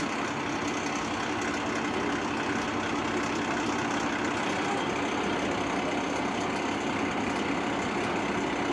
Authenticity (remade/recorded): recorded